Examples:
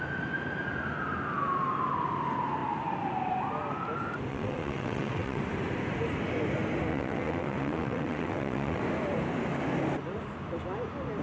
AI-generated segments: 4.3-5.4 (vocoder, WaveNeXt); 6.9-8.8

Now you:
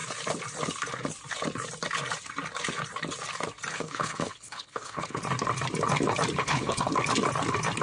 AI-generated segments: 3.7-5.2 (codec, HILCodec); 6.4-6.9